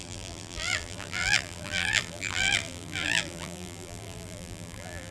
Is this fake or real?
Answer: fake